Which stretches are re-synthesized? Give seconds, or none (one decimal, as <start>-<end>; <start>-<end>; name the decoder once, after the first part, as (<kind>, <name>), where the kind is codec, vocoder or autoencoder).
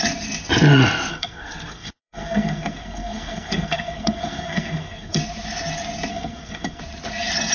1.1-5.2 (codec, SNAC); 6.1-6.8